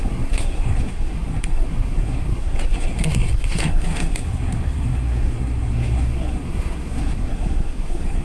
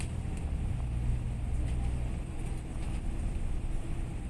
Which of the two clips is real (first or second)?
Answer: second